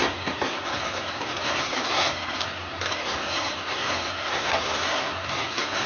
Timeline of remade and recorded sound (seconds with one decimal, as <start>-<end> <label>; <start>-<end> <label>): 0.0-5.9 remade